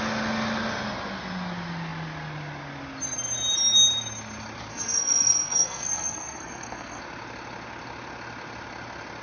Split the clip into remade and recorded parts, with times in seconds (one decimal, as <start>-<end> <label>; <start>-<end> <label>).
0.0-4.7 recorded; 4.7-7.0 remade; 7.0-9.2 recorded